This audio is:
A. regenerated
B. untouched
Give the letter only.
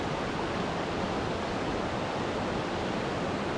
B